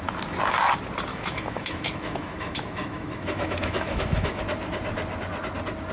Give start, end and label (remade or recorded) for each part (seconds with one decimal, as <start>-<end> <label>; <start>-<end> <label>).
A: 0.0-1.1 recorded; 1.1-4.4 remade; 4.4-5.9 recorded

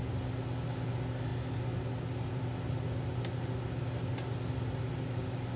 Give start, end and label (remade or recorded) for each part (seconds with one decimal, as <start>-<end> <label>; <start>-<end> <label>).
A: 0.0-5.6 recorded

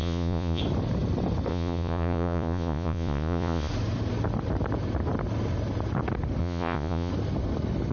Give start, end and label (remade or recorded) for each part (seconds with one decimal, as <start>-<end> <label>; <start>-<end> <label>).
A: 0.0-0.6 remade; 0.6-1.5 recorded; 1.5-3.7 remade; 3.7-6.4 recorded; 6.4-7.1 remade; 7.1-7.9 recorded

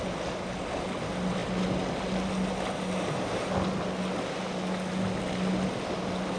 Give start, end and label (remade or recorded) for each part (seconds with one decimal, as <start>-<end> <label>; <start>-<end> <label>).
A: 0.0-6.4 recorded

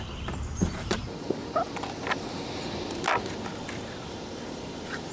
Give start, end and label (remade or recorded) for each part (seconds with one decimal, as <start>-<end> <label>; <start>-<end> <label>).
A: 0.0-1.0 remade; 1.0-4.1 recorded; 4.1-5.1 remade

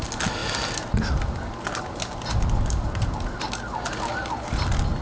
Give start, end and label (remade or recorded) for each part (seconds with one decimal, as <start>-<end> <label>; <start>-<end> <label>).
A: 0.0-5.0 recorded

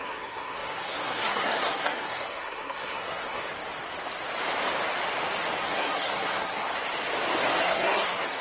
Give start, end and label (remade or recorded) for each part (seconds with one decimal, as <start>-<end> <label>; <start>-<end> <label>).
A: 0.0-3.5 remade; 3.5-5.6 recorded; 5.6-6.7 remade; 6.7-7.6 recorded; 7.6-8.4 remade

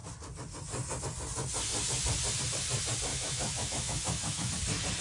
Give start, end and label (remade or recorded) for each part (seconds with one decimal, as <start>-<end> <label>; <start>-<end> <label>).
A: 0.0-3.1 recorded; 3.1-4.5 remade; 4.5-5.0 recorded